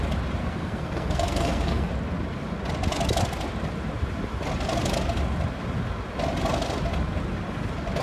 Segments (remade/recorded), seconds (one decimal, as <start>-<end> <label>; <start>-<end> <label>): 0.0-0.4 recorded; 0.4-1.9 remade; 1.9-8.0 recorded